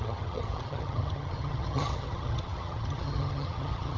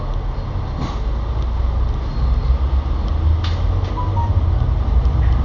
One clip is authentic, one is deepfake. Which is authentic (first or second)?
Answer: second